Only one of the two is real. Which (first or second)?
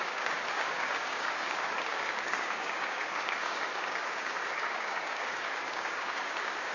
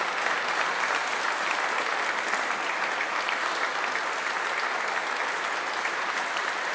second